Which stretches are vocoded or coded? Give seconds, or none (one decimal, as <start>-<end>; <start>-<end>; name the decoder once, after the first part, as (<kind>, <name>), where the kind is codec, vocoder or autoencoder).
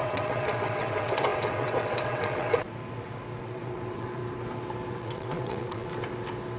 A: 0.0-2.7 (vocoder, WaveNeXt); 3.4-4.2; 4.9-5.9